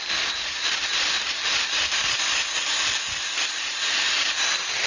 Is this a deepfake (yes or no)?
yes